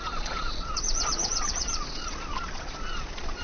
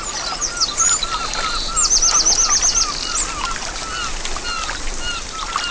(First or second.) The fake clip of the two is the first